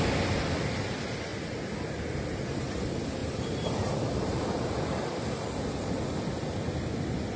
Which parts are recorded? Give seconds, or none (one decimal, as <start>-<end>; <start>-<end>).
0.0-3.2; 5.7-7.4